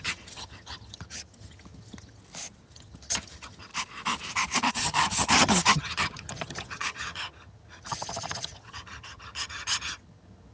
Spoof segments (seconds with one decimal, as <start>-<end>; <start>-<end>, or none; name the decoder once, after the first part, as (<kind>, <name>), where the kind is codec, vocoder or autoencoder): 0.0-2.2 (vocoder, HiFi-GAN); 2.7-3.7; 4.7-10.5